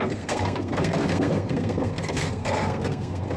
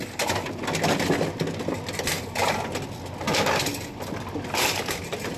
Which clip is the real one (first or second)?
second